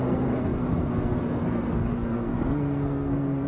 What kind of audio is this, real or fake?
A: fake